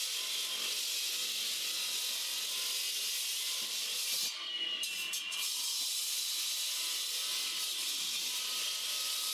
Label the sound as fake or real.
real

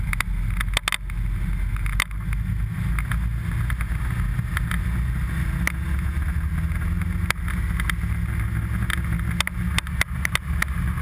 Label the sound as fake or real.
real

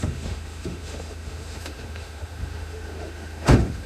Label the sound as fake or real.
fake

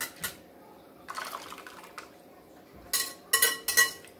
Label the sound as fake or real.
real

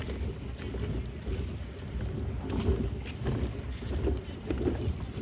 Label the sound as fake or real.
real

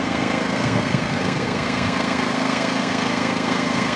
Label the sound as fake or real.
fake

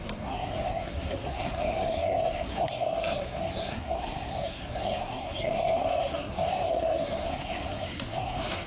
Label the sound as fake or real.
fake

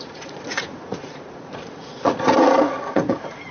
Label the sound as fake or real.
fake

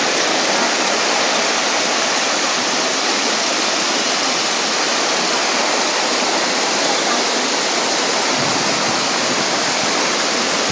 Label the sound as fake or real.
real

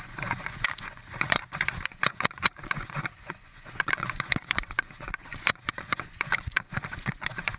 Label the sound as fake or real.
fake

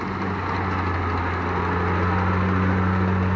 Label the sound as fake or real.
real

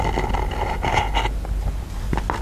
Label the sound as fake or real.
real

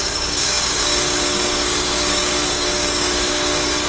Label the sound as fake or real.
fake